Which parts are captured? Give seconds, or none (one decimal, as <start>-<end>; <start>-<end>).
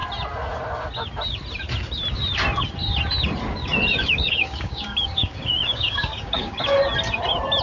0.0-4.0; 6.6-7.6